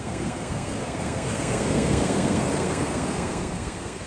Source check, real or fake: fake